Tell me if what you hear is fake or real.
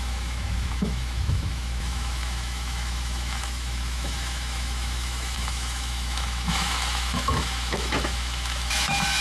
fake